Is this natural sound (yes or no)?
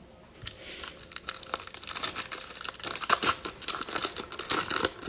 yes